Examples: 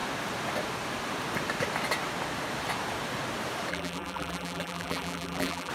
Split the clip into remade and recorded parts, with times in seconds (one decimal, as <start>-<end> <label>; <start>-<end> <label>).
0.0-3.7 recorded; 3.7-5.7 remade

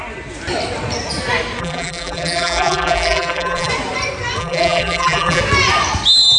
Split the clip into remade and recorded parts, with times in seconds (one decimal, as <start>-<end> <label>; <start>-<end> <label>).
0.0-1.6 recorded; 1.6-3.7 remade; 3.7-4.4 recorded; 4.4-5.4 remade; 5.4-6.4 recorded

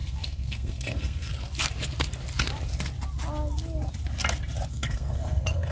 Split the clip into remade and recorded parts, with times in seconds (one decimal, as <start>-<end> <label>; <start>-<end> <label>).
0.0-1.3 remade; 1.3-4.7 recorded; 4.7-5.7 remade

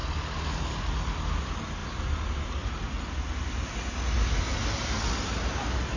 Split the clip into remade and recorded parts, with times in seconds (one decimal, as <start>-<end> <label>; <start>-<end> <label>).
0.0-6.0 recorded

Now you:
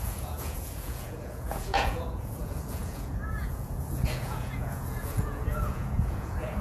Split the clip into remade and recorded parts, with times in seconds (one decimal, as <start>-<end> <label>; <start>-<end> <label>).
0.0-6.6 remade